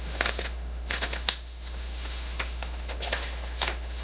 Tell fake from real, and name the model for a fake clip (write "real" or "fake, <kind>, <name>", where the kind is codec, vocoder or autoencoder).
fake, autoencoder, DAC-VAE